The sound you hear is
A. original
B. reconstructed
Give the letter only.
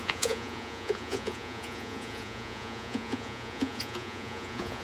B